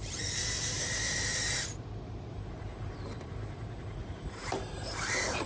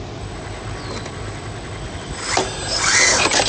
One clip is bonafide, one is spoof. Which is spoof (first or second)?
first